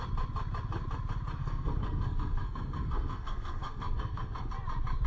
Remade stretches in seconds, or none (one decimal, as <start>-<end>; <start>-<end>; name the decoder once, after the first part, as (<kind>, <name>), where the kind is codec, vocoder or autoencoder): 1.4-4.5 (codec, SNAC)